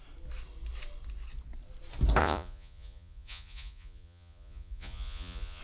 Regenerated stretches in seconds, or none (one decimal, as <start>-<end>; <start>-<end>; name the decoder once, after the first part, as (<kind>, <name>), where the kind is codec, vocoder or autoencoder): 2.2-5.6 (vocoder, Vocos)